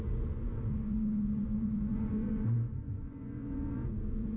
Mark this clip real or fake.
fake